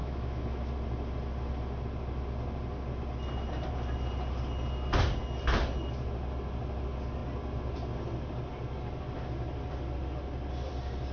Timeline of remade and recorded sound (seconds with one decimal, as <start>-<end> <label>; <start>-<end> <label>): 0.0-0.7 remade; 0.7-11.1 recorded